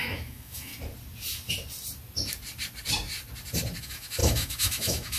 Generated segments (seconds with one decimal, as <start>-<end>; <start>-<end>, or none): 0.0-0.7; 3.8-5.2